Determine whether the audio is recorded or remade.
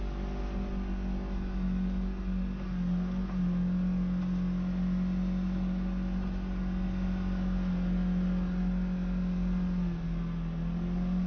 recorded